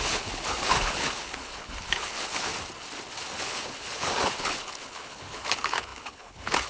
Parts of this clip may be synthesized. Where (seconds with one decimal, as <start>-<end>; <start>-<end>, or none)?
0.0-2.5; 3.4-6.7